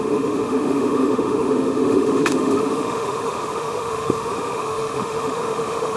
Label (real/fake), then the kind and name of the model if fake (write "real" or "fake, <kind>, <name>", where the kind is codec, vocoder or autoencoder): fake, autoencoder, DAC-VAE